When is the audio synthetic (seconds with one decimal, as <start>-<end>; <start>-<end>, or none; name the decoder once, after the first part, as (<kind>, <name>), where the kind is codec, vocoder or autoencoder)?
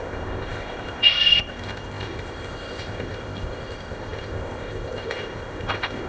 0.0-6.1 (codec, ZipCodec)